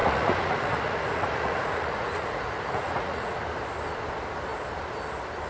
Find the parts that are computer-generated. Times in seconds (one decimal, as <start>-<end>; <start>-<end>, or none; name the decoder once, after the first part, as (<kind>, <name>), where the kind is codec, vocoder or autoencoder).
0.0-3.3 (vocoder, Vocos)